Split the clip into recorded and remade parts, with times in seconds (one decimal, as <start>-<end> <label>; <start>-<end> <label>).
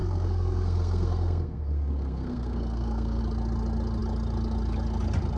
0.0-3.2 remade; 3.2-5.4 recorded